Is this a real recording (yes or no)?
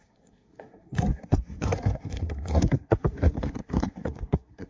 no